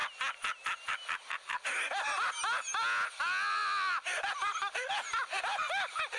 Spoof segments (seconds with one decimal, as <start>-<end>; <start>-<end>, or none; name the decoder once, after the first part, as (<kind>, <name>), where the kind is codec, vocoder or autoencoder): none